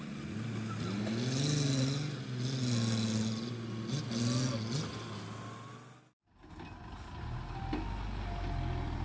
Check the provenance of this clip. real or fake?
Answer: real